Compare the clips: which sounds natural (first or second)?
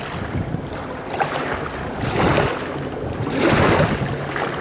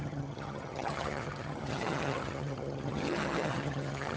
first